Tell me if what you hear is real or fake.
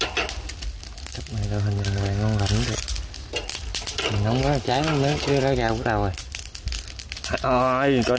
real